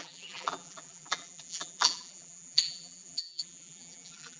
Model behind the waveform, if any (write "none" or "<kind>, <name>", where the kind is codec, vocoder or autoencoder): vocoder, BigVGAN v2